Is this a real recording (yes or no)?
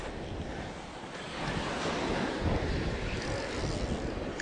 yes